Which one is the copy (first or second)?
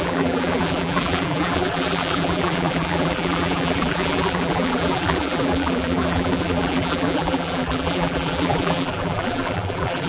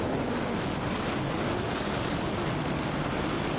first